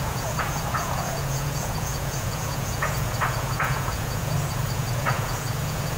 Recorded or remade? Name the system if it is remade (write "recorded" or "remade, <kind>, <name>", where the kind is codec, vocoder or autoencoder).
remade, vocoder, Vocos